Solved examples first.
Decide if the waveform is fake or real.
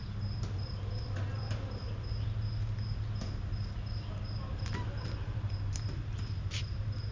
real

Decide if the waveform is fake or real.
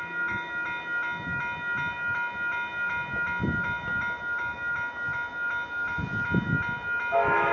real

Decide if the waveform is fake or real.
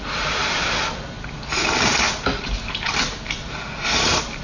real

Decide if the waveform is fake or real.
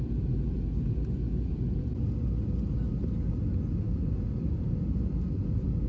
real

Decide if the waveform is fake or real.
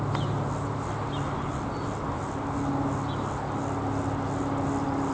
real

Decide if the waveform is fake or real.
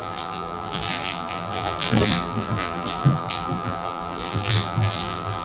fake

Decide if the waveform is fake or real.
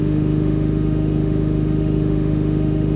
fake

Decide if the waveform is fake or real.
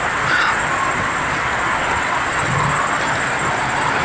real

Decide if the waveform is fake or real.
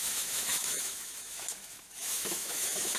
fake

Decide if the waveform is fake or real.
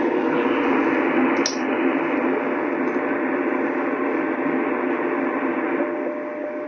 real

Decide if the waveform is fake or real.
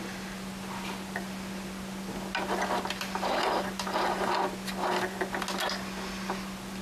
real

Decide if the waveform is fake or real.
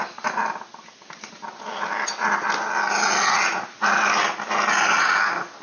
real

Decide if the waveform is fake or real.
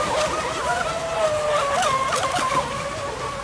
real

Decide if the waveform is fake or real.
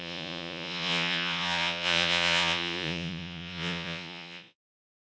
fake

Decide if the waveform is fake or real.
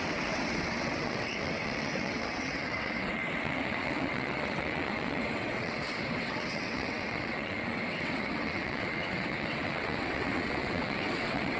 fake